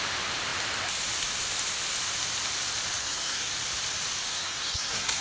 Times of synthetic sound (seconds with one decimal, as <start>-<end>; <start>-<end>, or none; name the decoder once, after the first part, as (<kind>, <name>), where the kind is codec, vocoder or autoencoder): 3.0-3.5 (codec, SNAC); 4.3-5.2